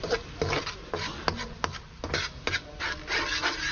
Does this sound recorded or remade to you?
recorded